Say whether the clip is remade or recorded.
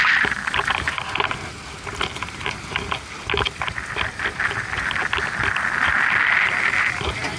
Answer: recorded